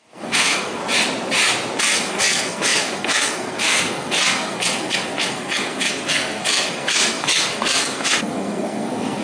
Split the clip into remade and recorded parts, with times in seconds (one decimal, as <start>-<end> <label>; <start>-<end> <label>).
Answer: 0.0-0.8 remade; 0.8-1.8 recorded; 1.8-9.2 remade